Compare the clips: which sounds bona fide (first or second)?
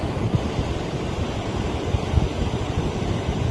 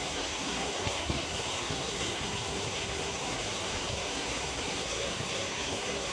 first